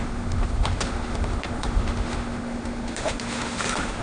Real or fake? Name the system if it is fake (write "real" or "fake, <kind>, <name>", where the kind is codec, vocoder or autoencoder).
fake, autoencoder, DAC-VAE